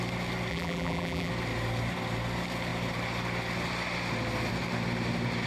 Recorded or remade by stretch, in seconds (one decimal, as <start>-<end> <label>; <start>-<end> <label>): 0.0-0.5 recorded; 0.5-1.3 remade; 1.3-5.5 recorded